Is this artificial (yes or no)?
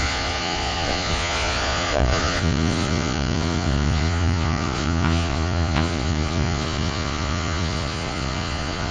yes